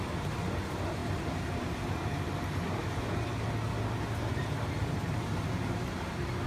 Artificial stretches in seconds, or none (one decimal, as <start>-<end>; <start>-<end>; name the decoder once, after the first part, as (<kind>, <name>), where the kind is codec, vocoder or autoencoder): 0.0-1.0 (vocoder, BigVGAN v2); 1.6-3.3; 4.7-6.5